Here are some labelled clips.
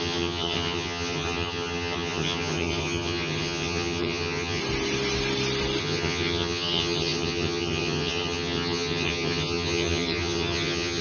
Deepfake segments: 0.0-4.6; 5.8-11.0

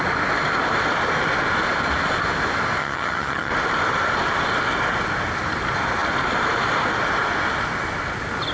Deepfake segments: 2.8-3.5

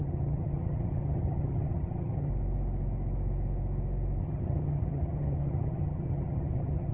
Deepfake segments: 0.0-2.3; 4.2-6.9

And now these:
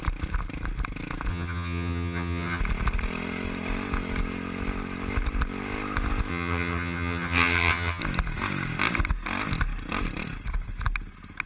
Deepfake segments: 1.3-2.6; 6.3-8.0

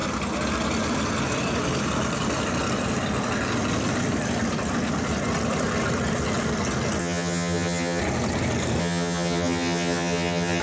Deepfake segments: 7.0-8.0; 8.8-10.6